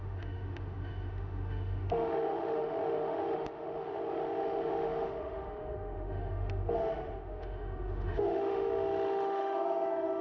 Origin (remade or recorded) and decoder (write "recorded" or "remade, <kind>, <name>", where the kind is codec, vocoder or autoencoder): remade, autoencoder, DAC-VAE